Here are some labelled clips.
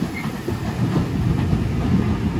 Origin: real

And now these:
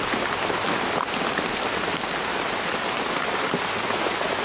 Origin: real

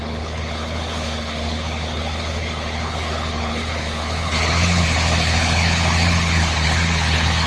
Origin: fake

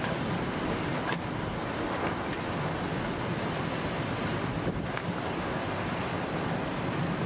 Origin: real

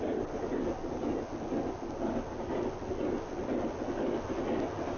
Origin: real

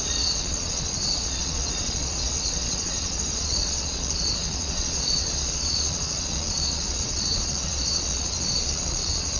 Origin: fake